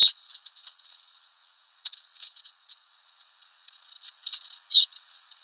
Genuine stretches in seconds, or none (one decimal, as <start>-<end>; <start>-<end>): none